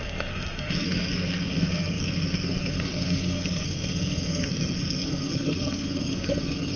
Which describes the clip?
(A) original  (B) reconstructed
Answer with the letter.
B